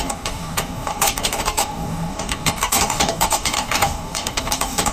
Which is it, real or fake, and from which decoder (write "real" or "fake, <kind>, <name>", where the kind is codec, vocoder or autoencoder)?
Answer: fake, codec, DAC